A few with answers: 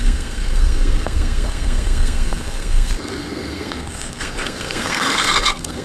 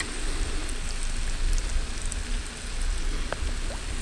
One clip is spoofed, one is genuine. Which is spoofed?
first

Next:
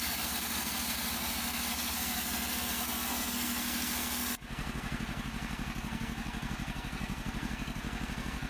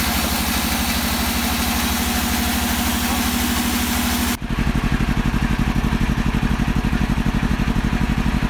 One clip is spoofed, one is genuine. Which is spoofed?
first